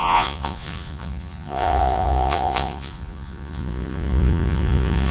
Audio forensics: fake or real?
fake